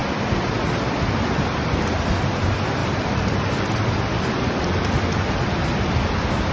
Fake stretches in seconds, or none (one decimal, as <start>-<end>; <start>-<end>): 2.8-5.8